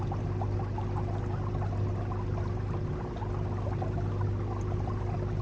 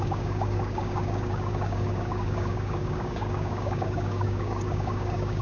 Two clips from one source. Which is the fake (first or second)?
second